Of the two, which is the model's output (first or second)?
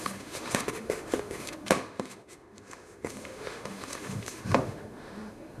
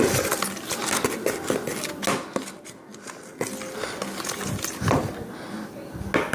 first